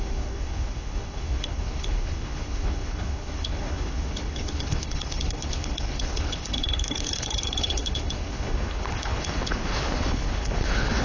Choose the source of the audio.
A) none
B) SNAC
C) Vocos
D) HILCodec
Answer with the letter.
D